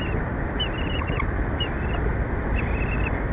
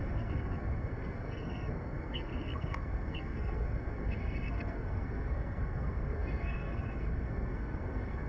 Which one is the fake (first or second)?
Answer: second